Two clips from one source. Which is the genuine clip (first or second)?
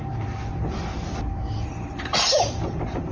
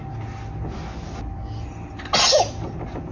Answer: second